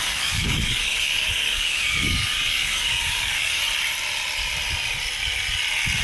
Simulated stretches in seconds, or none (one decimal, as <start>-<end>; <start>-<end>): 0.0-3.6